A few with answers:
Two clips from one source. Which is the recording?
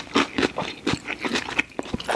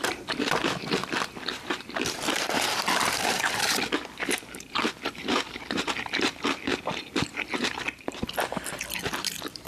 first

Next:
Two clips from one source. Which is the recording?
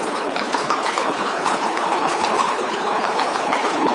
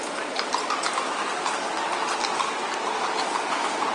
second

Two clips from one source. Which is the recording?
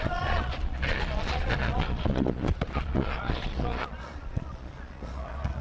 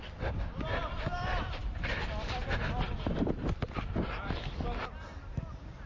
second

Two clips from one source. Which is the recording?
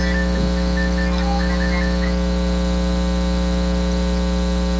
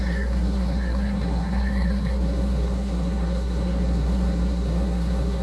first